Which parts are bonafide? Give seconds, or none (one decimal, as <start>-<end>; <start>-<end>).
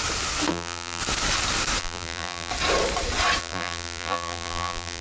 0.0-0.5; 1.0-1.8; 2.5-3.4